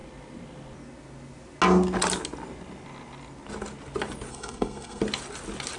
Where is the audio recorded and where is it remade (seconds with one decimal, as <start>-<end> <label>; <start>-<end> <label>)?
0.0-4.3 recorded; 4.3-5.0 remade; 5.0-5.8 recorded